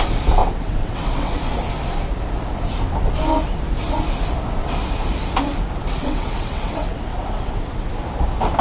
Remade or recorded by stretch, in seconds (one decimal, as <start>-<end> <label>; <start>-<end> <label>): 0.0-0.4 recorded; 0.4-1.3 remade; 1.3-5.8 recorded; 5.8-7.9 remade; 7.9-8.6 recorded